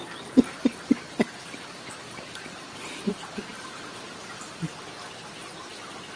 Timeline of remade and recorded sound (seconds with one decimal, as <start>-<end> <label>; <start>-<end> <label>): 0.0-6.2 recorded